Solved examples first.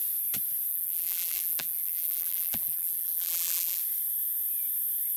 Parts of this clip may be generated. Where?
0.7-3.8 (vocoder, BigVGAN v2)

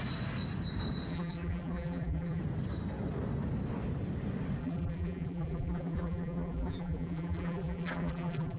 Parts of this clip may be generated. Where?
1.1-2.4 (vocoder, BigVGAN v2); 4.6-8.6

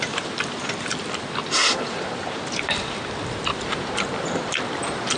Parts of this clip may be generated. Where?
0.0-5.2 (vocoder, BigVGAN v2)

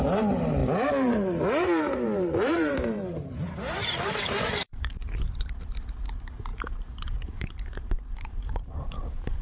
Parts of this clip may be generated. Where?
0.0-9.4 (vocoder, BigVGAN v2)